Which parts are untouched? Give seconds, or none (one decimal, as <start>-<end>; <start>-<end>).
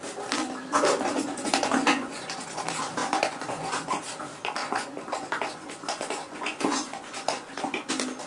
0.0-1.1; 2.6-3.0; 4.0-4.6; 7.9-8.3